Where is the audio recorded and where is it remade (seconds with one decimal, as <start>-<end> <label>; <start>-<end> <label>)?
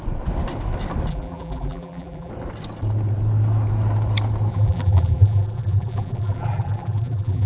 0.0-1.1 recorded; 1.1-2.3 remade; 2.3-4.5 recorded; 4.5-7.5 remade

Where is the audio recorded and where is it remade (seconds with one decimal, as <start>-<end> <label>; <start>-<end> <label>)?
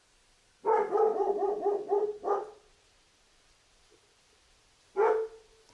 0.0-1.1 recorded; 1.1-4.5 remade; 4.5-5.7 recorded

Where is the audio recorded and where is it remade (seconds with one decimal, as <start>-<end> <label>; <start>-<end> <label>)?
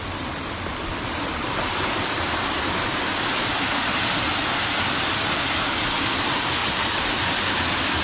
0.0-6.6 recorded; 6.6-7.3 remade; 7.3-8.0 recorded